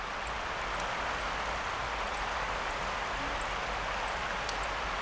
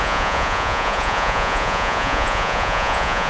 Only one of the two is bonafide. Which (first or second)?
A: first